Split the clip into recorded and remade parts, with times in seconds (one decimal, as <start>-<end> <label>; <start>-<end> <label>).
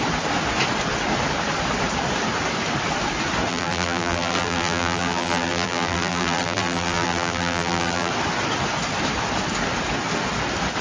0.0-3.5 recorded; 3.5-8.1 remade; 8.1-10.8 recorded